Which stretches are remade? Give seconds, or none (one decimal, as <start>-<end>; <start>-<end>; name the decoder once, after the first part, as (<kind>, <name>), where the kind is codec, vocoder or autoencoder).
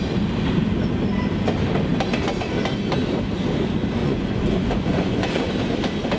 4.0-5.5 (vocoder, Vocos)